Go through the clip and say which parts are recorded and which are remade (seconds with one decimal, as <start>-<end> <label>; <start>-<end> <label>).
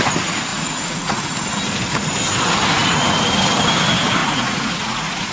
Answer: 0.0-0.5 recorded; 0.5-1.2 remade; 1.2-4.2 recorded; 4.2-5.3 remade